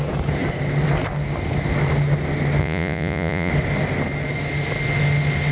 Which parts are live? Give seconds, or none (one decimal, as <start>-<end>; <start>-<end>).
0.0-2.6; 3.5-5.5